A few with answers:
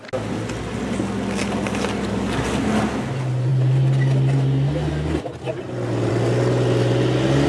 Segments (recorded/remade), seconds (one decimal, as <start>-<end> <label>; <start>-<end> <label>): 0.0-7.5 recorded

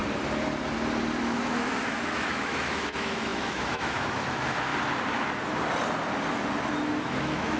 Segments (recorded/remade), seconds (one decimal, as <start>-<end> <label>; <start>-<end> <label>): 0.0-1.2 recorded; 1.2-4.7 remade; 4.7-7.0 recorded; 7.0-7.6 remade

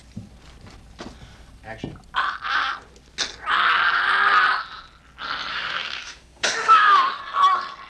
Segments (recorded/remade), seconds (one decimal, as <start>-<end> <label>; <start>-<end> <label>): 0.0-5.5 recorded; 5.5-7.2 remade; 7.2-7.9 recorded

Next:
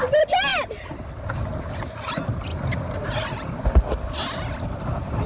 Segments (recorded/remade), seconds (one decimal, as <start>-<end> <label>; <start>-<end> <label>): 0.0-5.3 recorded

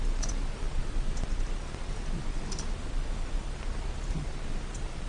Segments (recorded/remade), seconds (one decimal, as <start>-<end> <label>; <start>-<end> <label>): 0.0-5.1 recorded